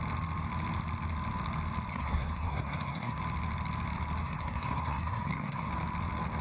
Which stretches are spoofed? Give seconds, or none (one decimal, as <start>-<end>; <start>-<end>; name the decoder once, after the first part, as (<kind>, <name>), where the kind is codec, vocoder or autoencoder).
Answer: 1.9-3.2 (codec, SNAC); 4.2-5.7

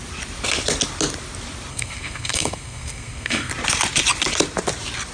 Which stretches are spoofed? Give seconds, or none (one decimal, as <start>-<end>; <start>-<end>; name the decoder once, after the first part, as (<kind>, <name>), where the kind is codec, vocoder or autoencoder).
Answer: 1.7-3.5 (codec, SNAC)

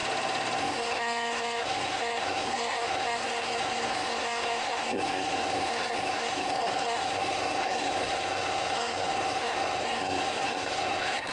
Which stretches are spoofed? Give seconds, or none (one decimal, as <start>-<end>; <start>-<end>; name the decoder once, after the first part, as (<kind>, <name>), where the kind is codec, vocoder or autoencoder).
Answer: 0.6-11.3 (codec, SNAC)

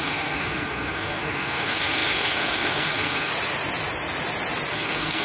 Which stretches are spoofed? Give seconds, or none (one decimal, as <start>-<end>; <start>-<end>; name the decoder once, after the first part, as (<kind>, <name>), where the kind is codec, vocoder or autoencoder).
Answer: 0.0-3.3 (codec, SNAC); 4.7-5.2

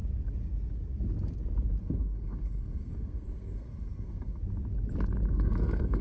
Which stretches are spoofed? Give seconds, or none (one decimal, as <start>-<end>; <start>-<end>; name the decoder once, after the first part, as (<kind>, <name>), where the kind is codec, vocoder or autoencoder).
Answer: 1.8-4.4 (codec, SNAC); 5.3-6.0

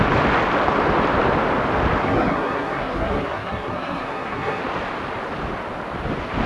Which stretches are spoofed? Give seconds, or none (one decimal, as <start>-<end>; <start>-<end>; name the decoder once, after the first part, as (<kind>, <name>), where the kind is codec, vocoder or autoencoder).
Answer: 2.0-4.6 (codec, SNAC)